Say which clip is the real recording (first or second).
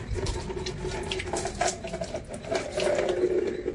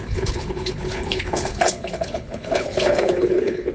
first